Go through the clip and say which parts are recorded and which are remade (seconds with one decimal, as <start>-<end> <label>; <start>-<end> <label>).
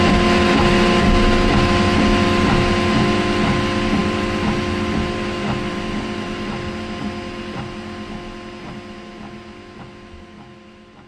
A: 0.0-11.1 recorded